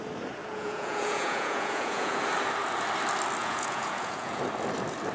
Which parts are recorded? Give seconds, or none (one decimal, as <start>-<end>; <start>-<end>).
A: 0.0-0.4; 2.2-3.4; 4.4-5.1